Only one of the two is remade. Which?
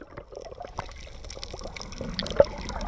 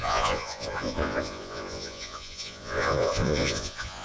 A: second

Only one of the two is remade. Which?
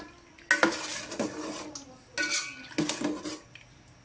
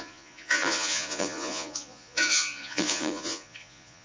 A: second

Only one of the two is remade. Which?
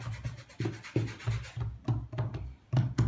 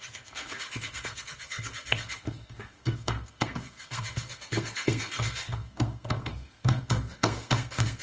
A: second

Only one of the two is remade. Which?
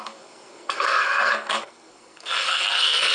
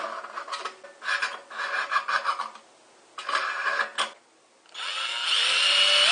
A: first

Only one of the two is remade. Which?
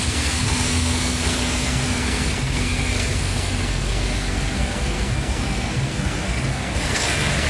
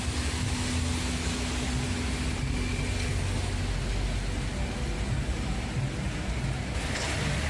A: first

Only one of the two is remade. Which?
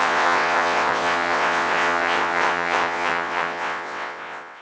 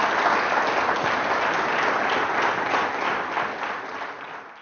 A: first